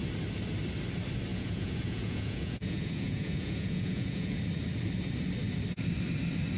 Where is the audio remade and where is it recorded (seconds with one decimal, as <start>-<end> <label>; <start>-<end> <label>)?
0.0-1.3 recorded; 1.3-4.4 remade; 4.4-6.6 recorded